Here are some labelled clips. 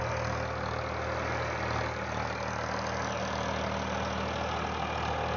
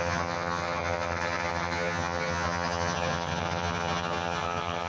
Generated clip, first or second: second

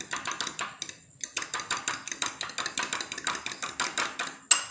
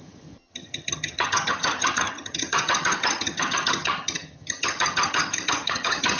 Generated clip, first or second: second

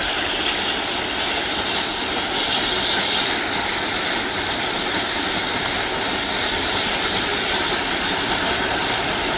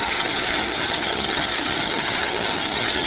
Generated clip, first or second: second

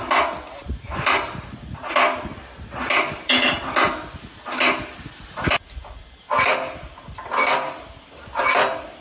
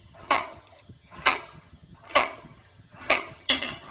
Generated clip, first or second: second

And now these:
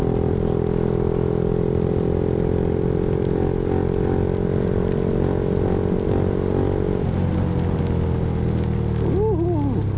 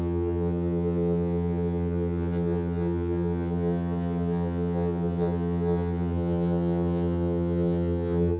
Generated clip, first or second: second